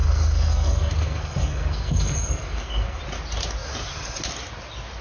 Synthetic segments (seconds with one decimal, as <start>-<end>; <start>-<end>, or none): 0.0-3.0